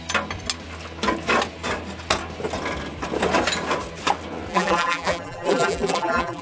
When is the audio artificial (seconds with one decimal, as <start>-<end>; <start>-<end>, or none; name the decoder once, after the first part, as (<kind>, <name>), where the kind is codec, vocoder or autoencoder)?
4.5-6.4 (vocoder, BigVGAN v2)